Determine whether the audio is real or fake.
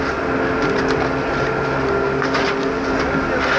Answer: real